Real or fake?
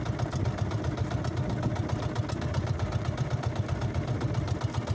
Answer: real